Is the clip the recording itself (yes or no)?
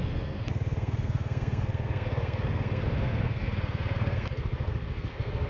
no